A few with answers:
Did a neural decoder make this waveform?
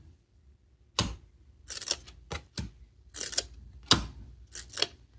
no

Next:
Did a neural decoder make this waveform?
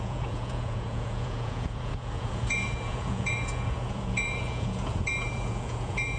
yes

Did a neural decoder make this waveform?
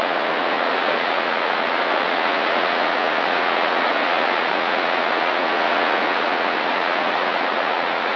yes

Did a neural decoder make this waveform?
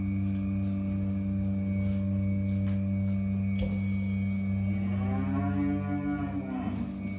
no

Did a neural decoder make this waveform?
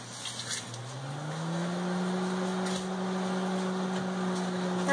no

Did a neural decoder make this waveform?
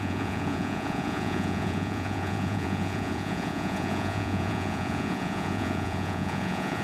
yes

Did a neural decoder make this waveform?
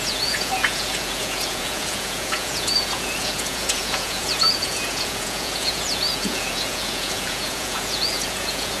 yes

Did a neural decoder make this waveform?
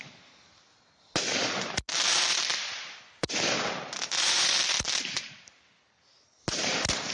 no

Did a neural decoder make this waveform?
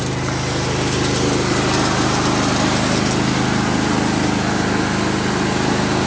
no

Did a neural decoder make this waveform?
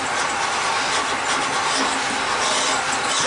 no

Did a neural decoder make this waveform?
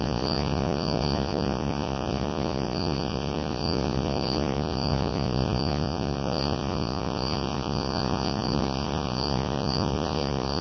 yes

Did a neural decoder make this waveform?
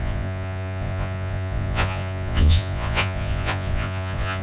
yes